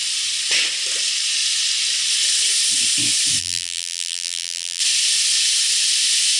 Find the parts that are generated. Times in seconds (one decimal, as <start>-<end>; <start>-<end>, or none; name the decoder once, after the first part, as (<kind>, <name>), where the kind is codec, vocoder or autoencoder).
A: 3.4-4.8 (vocoder, BigVGAN v2)